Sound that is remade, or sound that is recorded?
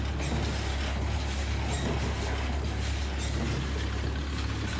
recorded